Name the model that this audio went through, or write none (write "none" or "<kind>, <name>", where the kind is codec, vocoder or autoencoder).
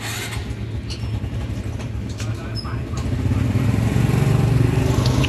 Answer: none